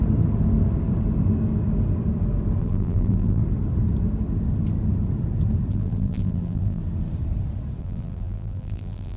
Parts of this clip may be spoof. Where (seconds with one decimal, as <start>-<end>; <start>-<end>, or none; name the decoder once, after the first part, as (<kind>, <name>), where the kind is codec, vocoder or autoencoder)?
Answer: 2.6-3.4 (vocoder, BigVGAN v2); 5.7-6.8; 7.8-9.2